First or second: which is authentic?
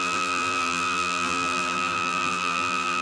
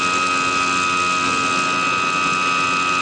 second